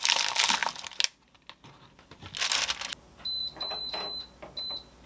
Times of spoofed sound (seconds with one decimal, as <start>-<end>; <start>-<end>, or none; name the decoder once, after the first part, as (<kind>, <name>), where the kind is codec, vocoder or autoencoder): 3.4-4.2 (vocoder, BigVGAN v2)